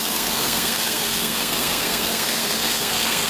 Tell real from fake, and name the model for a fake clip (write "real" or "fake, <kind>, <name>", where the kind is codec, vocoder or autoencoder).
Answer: fake, codec, SNAC